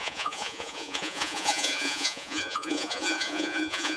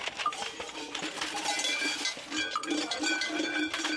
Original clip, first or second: second